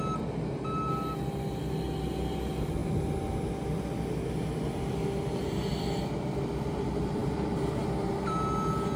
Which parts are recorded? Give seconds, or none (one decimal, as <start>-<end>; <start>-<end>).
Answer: 0.0-9.0